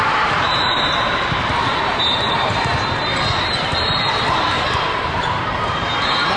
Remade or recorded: remade